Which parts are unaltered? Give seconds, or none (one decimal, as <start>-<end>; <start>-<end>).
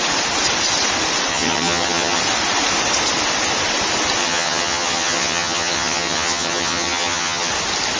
0.0-1.3; 2.2-4.2; 7.5-8.0